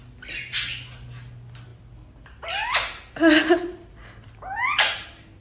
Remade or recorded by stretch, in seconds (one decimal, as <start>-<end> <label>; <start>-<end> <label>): 0.0-5.4 recorded